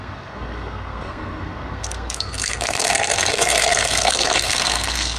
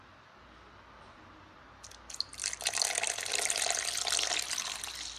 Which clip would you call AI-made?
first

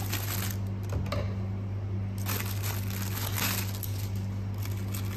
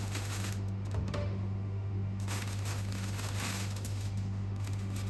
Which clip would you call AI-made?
second